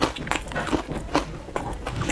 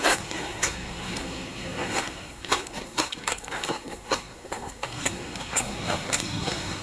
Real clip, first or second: first